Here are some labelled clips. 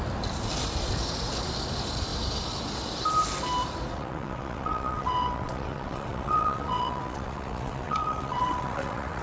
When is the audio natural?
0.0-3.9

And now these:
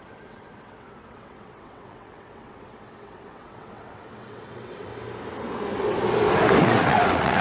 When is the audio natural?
4.9-6.6

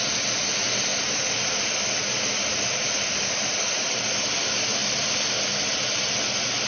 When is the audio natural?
0.0-6.7

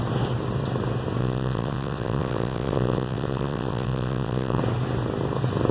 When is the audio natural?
0.0-1.2; 4.6-5.7

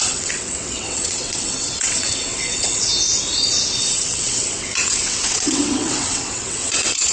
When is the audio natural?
2.9-3.8

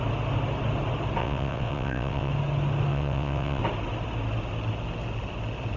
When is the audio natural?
0.0-1.2; 2.3-2.9; 3.6-5.8

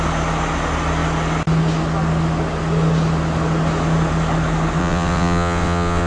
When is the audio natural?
0.0-4.8